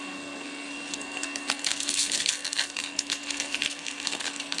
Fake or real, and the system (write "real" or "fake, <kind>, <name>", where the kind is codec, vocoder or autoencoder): fake, codec, SNAC